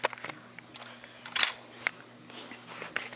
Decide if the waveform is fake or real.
real